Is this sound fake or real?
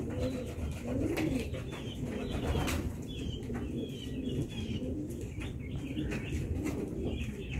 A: real